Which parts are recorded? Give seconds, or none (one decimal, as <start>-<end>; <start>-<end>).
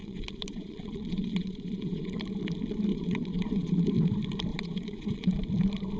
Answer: 2.2-2.9; 3.7-4.5; 5.3-6.0